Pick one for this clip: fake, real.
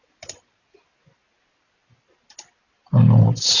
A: real